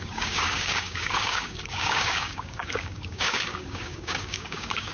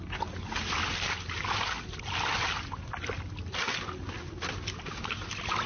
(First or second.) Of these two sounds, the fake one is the first